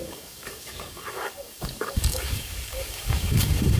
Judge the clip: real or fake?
fake